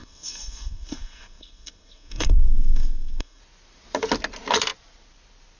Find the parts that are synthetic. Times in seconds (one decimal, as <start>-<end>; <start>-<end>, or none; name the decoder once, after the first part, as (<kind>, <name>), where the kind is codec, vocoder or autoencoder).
0.0-3.4 (codec, SNAC)